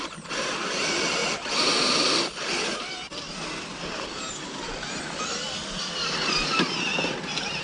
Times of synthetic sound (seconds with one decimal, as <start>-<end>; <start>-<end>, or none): none